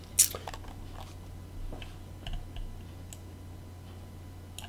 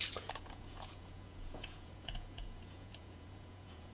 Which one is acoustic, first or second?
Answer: first